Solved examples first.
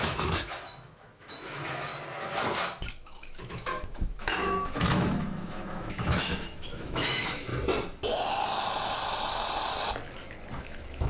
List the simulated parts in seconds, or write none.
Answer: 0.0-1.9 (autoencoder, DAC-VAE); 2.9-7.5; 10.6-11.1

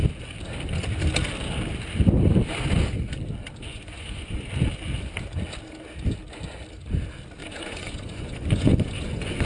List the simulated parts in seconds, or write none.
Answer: 3.7-4.5 (vocoder, Vocos); 7.4-9.5

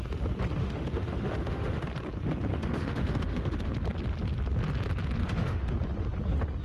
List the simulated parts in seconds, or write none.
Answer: 0.6-1.9 (autoencoder, DAC-VAE); 2.5-3.7; 5.2-5.7